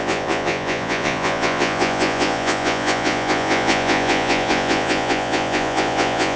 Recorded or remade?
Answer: remade